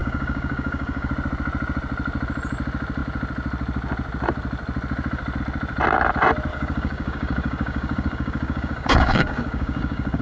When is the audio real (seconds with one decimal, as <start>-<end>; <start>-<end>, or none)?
1.1-6.5

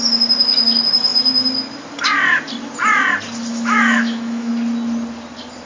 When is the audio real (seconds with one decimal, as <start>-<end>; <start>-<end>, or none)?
0.0-3.5; 4.5-5.7